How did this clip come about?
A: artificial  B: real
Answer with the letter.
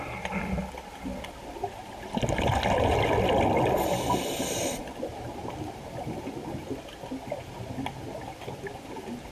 B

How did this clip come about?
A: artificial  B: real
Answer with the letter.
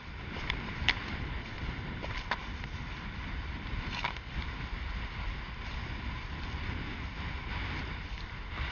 B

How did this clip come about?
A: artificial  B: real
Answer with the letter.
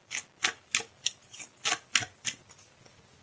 B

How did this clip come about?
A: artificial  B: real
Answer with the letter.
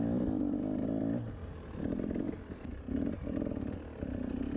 B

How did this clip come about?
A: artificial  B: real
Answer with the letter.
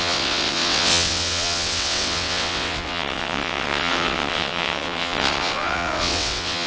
A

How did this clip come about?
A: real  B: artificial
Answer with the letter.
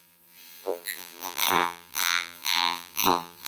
B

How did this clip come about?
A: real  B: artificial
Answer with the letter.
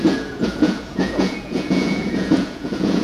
B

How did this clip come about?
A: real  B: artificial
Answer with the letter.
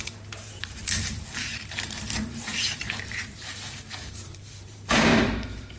B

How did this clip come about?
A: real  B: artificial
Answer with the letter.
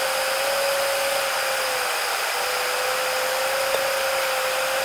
A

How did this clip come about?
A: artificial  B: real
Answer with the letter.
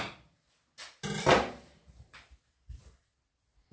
B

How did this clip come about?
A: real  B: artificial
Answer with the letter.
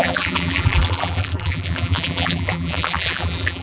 B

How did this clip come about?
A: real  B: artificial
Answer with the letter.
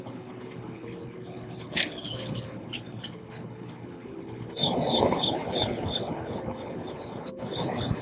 B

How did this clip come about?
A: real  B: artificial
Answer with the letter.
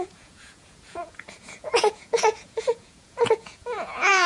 B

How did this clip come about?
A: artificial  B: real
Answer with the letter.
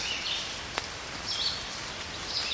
B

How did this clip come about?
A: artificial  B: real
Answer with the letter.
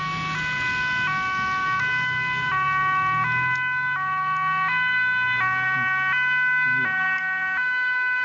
B